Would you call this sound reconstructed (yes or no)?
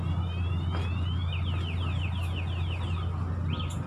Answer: no